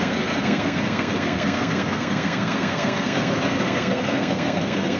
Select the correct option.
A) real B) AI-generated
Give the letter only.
B